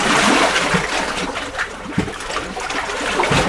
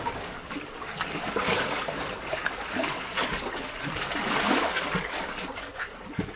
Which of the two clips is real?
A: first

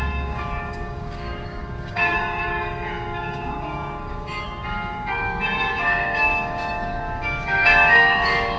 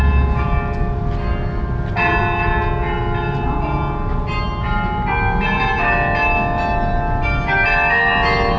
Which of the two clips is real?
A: second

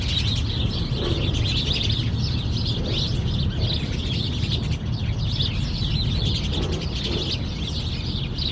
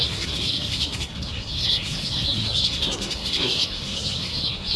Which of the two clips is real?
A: first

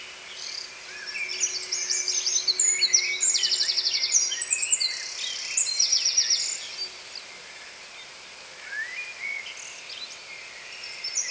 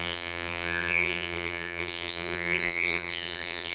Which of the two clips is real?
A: first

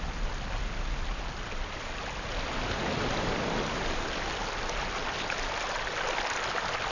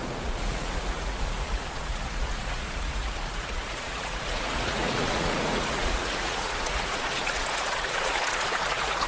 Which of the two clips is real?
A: first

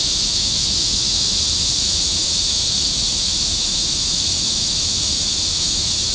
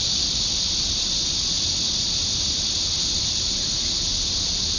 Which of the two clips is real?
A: second